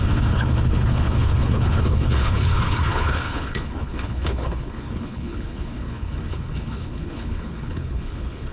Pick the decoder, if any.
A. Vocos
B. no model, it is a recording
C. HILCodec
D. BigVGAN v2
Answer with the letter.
C